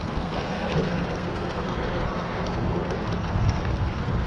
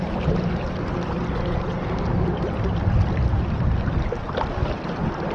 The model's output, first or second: first